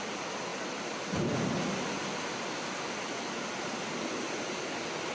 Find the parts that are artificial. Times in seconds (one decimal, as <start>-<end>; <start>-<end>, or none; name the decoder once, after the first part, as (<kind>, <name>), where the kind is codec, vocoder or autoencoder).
none